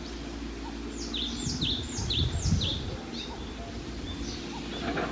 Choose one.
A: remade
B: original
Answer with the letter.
B